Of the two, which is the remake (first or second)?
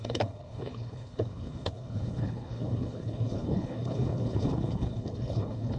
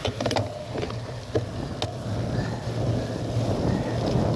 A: first